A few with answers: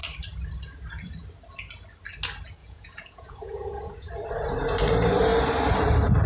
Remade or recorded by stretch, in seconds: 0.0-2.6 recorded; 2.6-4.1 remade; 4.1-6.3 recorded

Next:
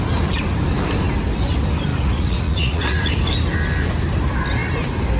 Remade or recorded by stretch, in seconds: 0.0-1.9 recorded; 1.9-3.1 remade; 3.1-5.2 recorded

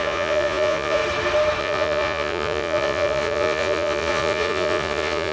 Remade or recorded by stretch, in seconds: 0.0-1.0 remade; 1.0-1.6 recorded; 1.6-5.3 remade

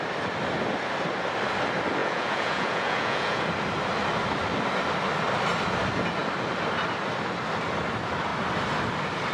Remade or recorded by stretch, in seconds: 0.0-2.0 recorded; 2.0-3.4 remade; 3.4-9.3 recorded

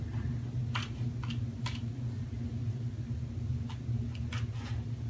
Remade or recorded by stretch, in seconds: 0.0-5.1 recorded

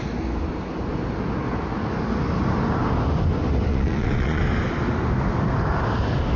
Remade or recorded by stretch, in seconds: 0.0-3.7 recorded; 3.7-4.4 remade; 4.4-6.4 recorded

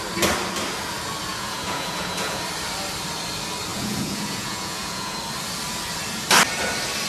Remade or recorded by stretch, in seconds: 0.0-1.3 recorded; 1.3-2.4 remade; 2.4-3.7 recorded; 3.7-5.2 remade; 5.2-7.1 recorded